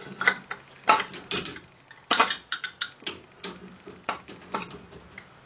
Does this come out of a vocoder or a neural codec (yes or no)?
no